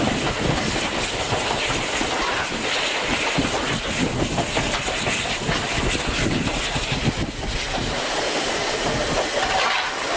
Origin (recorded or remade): recorded